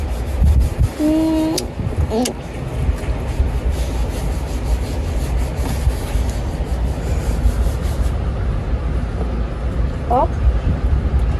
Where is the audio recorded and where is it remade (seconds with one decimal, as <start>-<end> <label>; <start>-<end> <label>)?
0.0-11.4 recorded